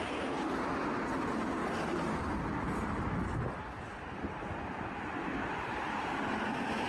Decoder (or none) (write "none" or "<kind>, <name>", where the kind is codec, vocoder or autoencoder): none